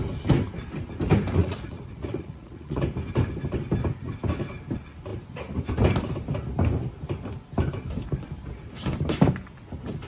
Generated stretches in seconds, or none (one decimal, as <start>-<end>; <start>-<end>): 1.4-2.8